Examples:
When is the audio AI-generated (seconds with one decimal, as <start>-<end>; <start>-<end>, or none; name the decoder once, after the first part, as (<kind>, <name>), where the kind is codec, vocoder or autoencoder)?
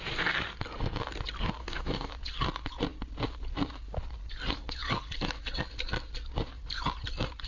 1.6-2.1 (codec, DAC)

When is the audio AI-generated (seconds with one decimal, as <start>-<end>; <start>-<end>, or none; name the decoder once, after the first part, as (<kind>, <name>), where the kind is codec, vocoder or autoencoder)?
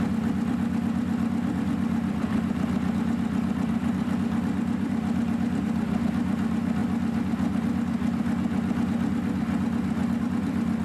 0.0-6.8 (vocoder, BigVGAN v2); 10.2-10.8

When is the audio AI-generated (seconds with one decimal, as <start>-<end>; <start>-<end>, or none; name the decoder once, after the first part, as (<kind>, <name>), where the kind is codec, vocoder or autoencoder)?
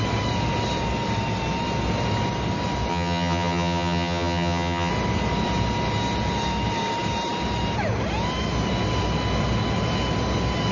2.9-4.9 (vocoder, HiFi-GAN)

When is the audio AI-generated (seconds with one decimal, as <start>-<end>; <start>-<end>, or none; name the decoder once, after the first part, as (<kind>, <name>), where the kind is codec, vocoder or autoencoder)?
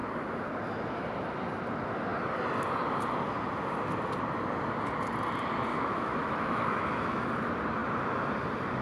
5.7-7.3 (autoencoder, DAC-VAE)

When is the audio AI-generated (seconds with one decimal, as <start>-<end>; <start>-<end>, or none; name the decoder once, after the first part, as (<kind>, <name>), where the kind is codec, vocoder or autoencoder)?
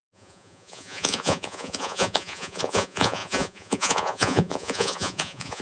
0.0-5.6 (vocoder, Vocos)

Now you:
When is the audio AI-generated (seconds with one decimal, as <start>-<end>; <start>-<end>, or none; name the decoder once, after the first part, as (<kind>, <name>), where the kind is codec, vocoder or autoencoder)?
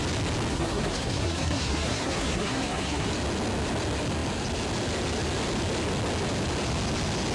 0.5-3.1 (codec, SNAC)